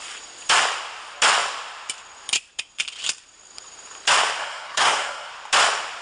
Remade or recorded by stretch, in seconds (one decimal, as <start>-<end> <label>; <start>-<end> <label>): 0.0-4.4 recorded; 4.4-5.3 remade; 5.3-6.0 recorded